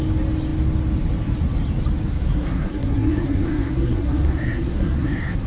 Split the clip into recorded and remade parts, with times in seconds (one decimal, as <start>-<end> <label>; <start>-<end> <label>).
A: 0.0-2.1 recorded; 2.1-5.5 remade